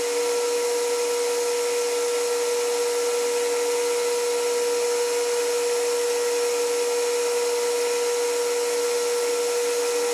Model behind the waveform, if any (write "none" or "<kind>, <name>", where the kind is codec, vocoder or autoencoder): none